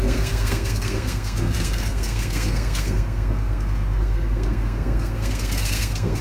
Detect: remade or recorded remade